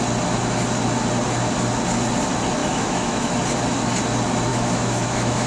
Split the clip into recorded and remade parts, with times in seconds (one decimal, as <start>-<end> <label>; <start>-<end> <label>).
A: 0.0-2.6 recorded; 2.6-3.3 remade; 3.3-4.5 recorded; 4.5-5.5 remade